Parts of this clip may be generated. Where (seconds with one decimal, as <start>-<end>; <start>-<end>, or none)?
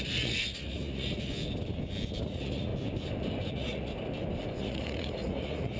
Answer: 0.0-1.3; 2.2-2.7; 3.5-3.9; 4.6-5.8